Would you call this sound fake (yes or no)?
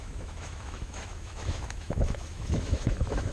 yes